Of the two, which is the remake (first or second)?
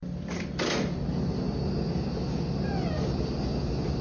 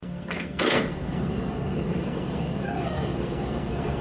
second